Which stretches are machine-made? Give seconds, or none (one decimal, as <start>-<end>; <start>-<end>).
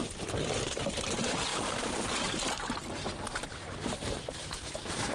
4.4-5.1